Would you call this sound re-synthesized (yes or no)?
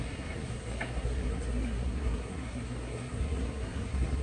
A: yes